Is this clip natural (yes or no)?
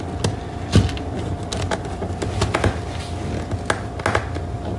yes